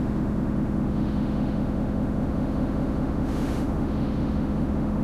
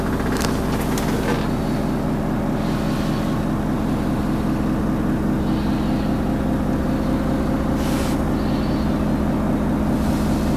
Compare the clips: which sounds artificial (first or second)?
first